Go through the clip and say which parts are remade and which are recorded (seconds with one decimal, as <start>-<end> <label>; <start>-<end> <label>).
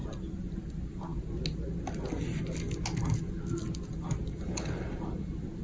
0.0-0.7 remade; 0.7-5.6 recorded